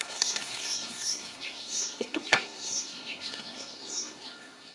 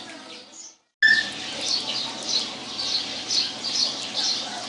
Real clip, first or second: second